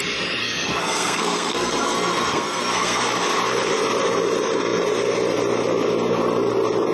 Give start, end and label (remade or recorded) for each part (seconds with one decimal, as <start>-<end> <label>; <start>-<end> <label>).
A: 0.0-0.4 recorded; 0.4-3.0 remade; 3.0-6.9 recorded